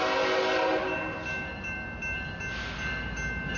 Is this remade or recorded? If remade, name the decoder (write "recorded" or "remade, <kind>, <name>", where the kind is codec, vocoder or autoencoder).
recorded